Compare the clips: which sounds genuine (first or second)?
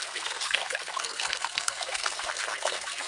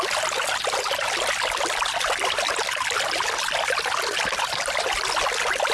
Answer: second